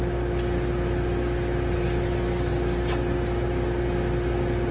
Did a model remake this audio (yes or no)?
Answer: no